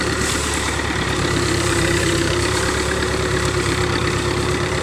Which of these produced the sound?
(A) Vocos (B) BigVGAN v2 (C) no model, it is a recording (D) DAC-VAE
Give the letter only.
B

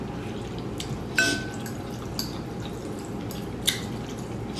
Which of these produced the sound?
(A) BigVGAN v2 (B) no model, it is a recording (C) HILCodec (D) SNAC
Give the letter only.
B